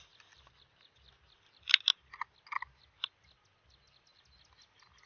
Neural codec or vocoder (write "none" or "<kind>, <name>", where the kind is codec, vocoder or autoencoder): none